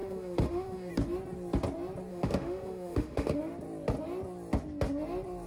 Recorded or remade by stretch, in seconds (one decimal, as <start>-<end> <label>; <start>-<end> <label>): 0.0-0.9 remade; 0.9-2.1 recorded; 2.1-3.4 remade; 3.4-5.5 recorded